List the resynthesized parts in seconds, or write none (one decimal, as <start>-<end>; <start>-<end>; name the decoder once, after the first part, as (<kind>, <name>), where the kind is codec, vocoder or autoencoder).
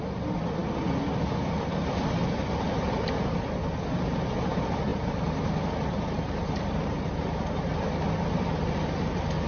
4.9-7.8 (vocoder, BigVGAN v2)